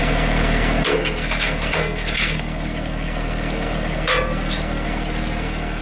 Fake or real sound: fake